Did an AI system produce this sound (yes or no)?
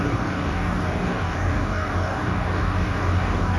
yes